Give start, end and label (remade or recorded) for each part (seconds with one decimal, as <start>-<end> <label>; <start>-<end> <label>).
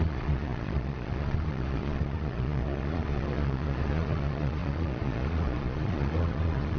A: 0.0-6.8 remade